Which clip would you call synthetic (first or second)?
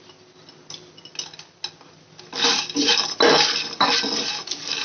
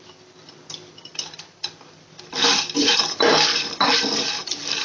second